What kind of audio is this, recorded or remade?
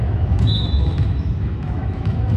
remade